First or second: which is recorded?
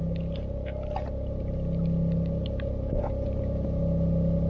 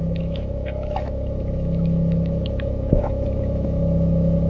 first